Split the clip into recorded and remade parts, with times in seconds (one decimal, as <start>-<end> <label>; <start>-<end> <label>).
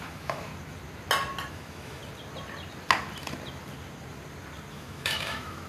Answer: 0.0-0.5 remade; 0.5-1.5 recorded; 1.5-2.0 remade; 2.0-4.7 recorded; 4.7-5.7 remade